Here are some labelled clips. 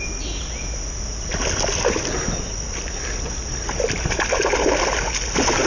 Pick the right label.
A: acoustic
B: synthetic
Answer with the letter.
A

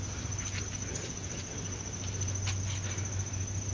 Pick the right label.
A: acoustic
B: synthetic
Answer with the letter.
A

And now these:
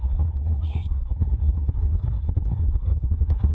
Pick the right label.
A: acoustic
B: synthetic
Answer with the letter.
B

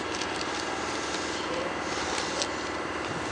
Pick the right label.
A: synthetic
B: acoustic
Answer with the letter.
B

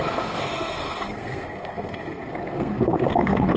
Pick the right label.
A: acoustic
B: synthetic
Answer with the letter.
B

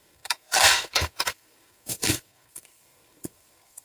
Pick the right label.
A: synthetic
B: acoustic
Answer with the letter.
A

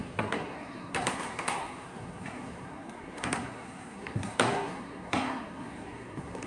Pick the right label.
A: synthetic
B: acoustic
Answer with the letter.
A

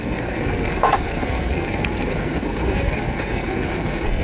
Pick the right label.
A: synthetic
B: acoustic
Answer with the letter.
A